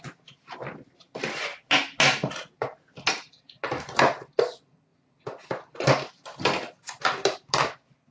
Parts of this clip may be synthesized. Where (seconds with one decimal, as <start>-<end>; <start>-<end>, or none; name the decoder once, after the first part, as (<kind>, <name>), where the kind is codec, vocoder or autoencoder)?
none